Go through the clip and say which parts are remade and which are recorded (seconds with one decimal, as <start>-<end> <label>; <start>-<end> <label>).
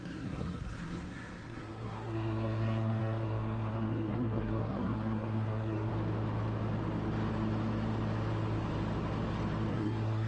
0.0-5.9 remade; 5.9-9.7 recorded; 9.7-10.3 remade